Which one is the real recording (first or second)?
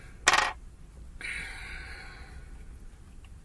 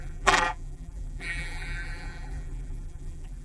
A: first